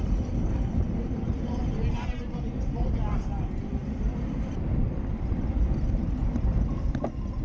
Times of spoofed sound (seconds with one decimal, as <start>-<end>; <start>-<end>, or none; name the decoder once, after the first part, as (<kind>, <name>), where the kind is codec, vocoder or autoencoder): 3.8-4.9 (vocoder, BigVGAN v2); 6.2-6.7